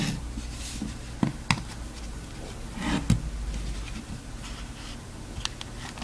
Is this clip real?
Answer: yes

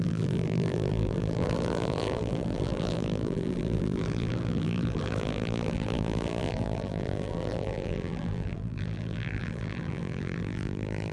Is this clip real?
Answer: no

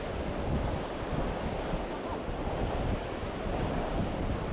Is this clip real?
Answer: yes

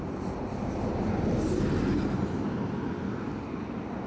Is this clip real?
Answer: yes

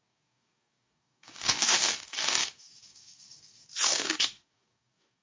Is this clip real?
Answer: no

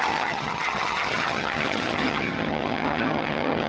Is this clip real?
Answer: no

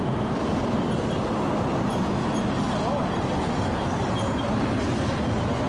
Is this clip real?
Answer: yes